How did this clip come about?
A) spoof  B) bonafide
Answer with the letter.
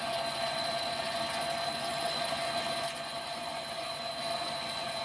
A